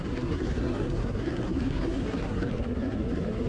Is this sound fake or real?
fake